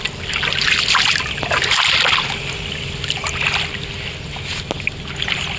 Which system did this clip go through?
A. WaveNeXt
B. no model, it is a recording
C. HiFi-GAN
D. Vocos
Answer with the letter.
B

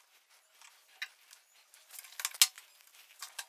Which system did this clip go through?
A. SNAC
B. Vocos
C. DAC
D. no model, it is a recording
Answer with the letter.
D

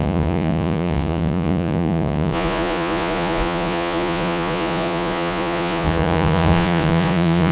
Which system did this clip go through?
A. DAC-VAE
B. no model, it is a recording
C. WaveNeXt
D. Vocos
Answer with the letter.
D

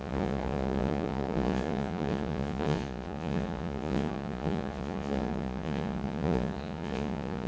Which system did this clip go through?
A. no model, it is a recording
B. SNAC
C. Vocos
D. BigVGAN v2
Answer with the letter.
C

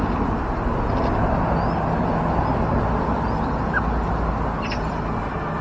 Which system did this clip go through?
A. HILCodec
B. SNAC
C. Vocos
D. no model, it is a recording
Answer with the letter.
D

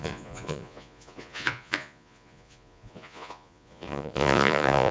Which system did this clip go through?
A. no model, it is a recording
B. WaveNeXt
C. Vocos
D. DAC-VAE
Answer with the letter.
C